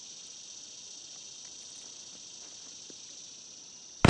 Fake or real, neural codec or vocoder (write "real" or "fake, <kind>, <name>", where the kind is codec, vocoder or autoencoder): real